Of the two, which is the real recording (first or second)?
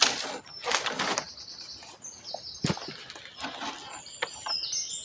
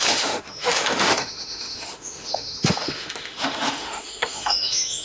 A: first